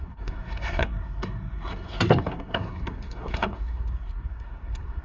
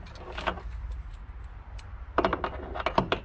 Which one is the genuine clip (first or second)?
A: second